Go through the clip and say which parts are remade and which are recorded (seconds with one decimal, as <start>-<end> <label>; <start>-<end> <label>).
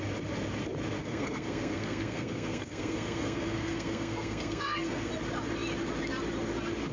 0.0-1.0 recorded; 1.0-5.1 remade; 5.1-6.9 recorded